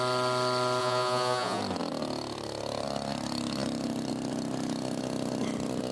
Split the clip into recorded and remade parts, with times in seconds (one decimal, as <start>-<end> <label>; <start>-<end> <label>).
0.0-0.8 recorded; 0.8-1.6 remade; 1.6-5.9 recorded